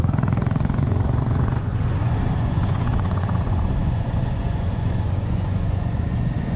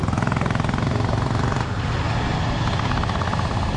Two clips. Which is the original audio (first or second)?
second